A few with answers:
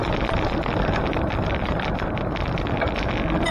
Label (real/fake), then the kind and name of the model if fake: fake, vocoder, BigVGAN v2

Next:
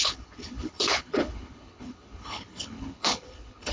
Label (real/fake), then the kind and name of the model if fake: fake, codec, HILCodec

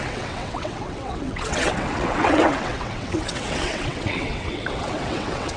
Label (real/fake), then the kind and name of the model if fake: fake, vocoder, WaveNeXt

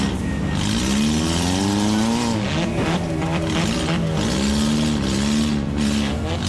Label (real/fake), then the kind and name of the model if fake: real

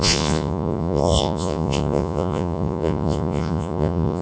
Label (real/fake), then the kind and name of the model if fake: fake, vocoder, Vocos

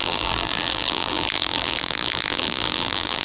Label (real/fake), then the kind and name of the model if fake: fake, vocoder, BigVGAN v2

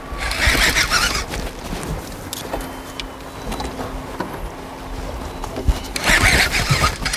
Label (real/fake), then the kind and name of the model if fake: real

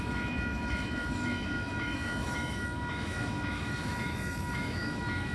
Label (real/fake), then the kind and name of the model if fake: fake, autoencoder, DAC-VAE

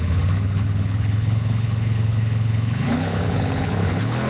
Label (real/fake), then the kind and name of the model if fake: fake, codec, HILCodec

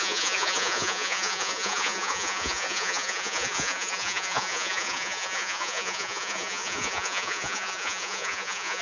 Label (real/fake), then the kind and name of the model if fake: fake, vocoder, Vocos